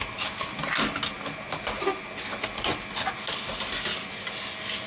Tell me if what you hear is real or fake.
real